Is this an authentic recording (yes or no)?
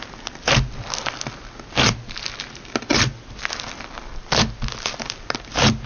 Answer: yes